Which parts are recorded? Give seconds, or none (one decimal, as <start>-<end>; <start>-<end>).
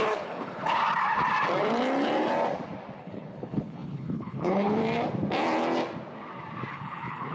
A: 0.8-3.0; 4.8-6.7